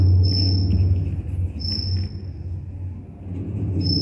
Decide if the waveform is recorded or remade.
recorded